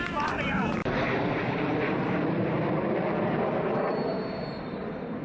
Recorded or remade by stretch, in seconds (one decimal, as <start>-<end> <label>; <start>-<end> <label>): 0.0-0.8 recorded; 0.8-3.9 remade; 3.9-5.2 recorded